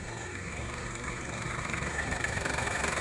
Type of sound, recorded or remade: remade